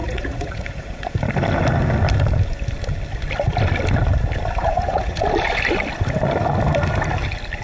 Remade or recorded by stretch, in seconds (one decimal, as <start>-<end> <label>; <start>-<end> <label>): 0.0-1.1 remade; 1.1-4.6 recorded; 4.6-5.2 remade; 5.2-7.6 recorded